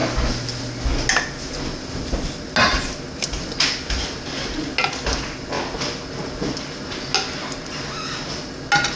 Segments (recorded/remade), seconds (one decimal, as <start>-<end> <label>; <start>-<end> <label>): 0.0-8.9 recorded